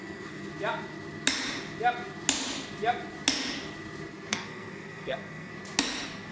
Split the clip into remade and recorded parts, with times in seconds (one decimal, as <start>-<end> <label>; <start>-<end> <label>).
0.0-0.5 remade; 0.5-4.3 recorded; 4.3-5.5 remade; 5.5-6.3 recorded